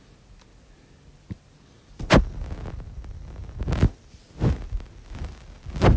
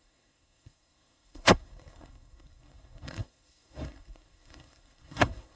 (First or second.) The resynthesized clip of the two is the second